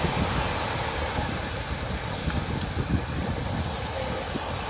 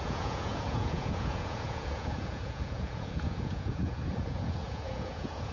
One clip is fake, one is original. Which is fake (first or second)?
second